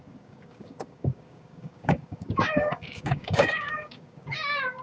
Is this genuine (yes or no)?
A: no